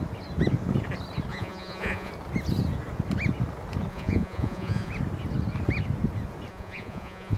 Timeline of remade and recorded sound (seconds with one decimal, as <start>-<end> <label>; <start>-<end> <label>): 0.0-1.3 recorded; 1.3-2.1 remade; 2.1-3.9 recorded; 3.9-4.9 remade; 4.9-6.5 recorded; 6.5-7.4 remade